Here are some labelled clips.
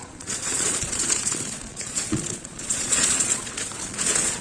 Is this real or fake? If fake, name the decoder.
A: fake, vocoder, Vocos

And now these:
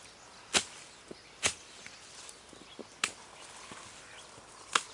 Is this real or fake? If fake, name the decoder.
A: real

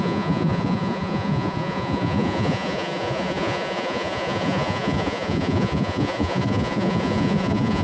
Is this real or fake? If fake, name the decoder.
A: fake, vocoder, Vocos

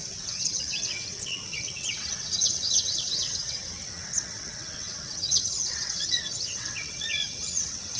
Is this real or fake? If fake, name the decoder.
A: fake, vocoder, WaveNeXt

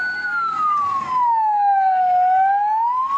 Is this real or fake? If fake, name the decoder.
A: real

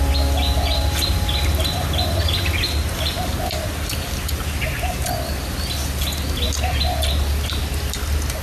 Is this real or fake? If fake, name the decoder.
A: real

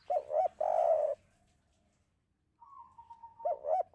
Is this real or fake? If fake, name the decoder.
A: real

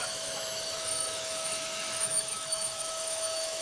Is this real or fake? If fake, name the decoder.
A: fake, autoencoder, DAC-VAE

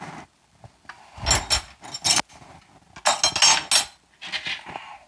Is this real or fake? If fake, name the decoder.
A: real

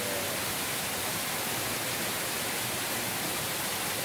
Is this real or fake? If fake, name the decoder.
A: real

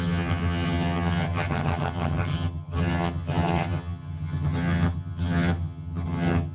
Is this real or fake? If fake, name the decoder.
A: fake, vocoder, HiFi-GAN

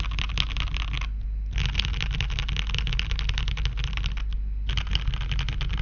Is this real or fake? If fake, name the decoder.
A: real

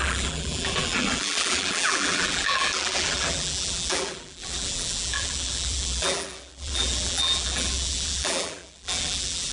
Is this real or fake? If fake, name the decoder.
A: fake, vocoder, BigVGAN v2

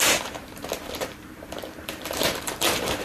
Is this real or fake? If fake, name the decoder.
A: fake, vocoder, BigVGAN v2